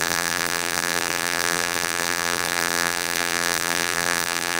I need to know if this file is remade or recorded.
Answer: remade